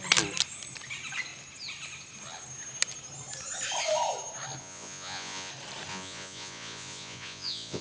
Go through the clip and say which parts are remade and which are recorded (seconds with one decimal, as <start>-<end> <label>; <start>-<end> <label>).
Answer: 0.0-4.6 recorded; 4.6-5.5 remade; 5.5-5.9 recorded; 5.9-7.8 remade